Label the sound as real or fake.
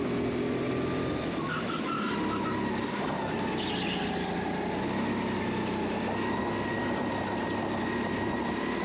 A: real